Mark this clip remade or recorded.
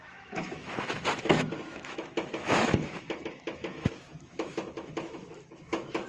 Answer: remade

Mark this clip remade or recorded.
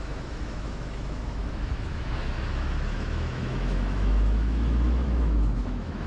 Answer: remade